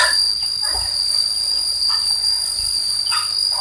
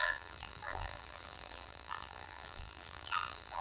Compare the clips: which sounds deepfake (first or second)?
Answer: second